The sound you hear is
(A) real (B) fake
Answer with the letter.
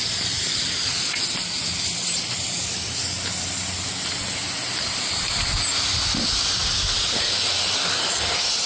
A